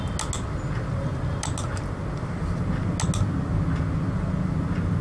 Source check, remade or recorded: recorded